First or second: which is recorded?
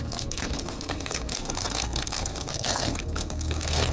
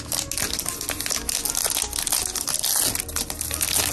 second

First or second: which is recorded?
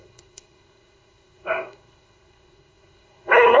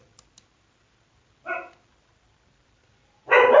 second